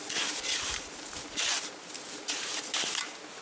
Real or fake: real